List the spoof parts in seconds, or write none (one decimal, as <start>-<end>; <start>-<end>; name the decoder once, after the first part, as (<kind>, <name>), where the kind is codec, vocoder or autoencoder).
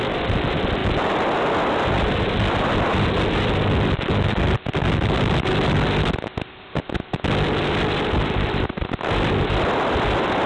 none